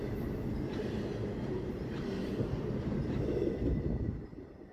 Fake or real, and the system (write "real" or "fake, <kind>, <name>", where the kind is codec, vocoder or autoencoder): real